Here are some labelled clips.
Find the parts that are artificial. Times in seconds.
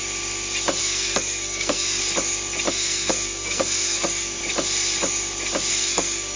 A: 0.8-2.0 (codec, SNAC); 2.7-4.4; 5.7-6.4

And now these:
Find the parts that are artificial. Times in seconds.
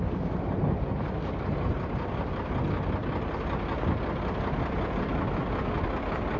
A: none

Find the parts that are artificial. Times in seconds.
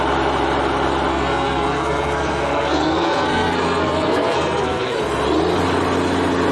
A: 1.1-5.0 (codec, SNAC)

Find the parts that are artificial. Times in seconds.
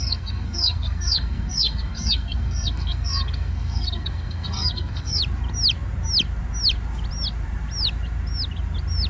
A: 0.0-5.2 (codec, SNAC)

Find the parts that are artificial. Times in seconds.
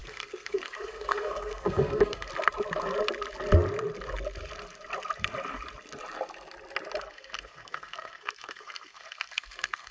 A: 0.0-2.3 (codec, SNAC); 7.1-9.9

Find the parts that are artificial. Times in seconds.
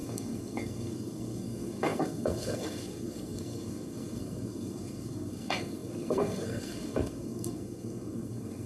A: 0.0-8.7 (codec, SNAC)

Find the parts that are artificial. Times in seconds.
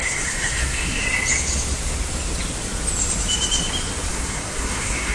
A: 0.0-1.0 (codec, SNAC); 4.1-5.1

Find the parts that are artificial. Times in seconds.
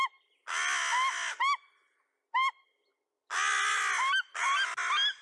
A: none